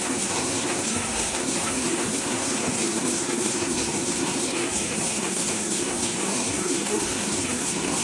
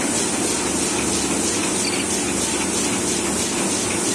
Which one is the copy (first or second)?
first